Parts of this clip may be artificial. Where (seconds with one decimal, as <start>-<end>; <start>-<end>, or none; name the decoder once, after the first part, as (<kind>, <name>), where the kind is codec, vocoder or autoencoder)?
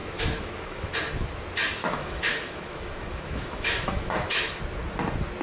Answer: 0.0-0.9 (autoencoder, DAC-VAE); 1.8-4.6